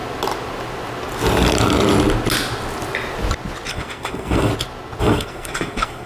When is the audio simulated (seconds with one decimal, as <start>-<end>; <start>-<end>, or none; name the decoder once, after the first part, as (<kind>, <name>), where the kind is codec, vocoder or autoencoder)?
3.7-4.5 (codec, SNAC); 5.0-6.1